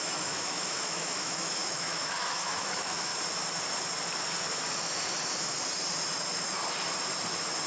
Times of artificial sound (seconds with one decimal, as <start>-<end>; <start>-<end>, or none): 0.0-3.1